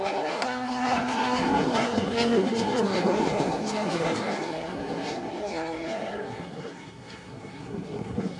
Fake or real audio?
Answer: fake